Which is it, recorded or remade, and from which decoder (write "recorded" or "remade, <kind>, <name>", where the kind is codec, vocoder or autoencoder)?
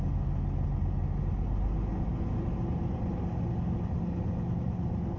recorded